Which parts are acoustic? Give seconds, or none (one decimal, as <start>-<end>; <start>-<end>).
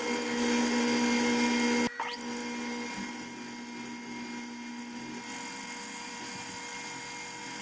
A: 0.0-7.6